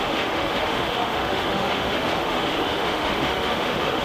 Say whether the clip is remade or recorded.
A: remade